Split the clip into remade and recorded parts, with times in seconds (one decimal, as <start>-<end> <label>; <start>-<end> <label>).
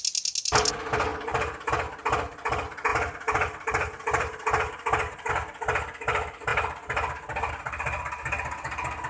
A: 0.0-1.1 recorded; 1.1-1.7 remade; 1.7-2.9 recorded; 2.9-5.3 remade; 5.3-9.1 recorded